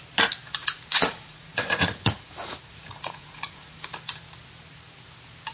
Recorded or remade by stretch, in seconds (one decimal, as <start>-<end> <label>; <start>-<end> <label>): 0.0-0.6 recorded; 0.6-3.9 remade; 3.9-5.5 recorded